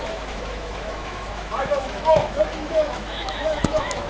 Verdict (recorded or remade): remade